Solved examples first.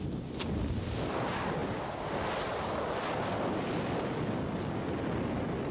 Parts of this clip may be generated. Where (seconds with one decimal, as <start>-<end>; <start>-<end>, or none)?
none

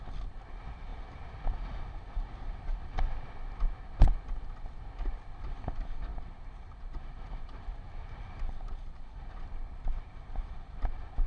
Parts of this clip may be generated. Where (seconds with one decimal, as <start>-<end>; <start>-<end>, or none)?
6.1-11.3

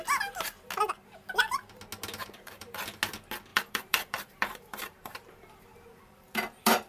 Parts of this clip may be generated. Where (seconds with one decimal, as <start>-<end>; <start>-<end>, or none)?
2.2-3.0; 3.5-6.9

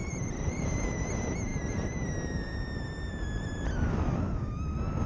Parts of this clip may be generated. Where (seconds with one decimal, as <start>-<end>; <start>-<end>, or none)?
0.0-0.5